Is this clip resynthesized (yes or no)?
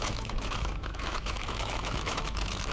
yes